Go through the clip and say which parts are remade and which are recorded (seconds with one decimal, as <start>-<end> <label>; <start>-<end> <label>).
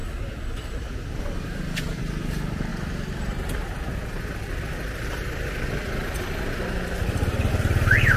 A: 0.0-1.2 recorded; 1.2-2.7 remade; 2.7-7.5 recorded; 7.5-8.2 remade